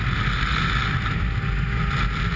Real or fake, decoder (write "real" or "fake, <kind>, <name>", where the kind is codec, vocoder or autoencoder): real